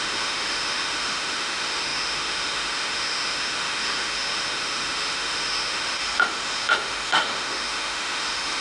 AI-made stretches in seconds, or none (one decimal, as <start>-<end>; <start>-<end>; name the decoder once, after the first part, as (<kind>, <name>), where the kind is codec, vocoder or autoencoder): 0.0-8.6 (autoencoder, DAC-VAE)